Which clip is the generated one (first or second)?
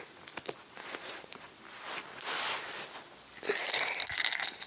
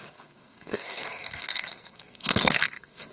second